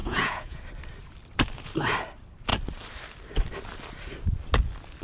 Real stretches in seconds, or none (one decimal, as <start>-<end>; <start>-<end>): 0.6-5.0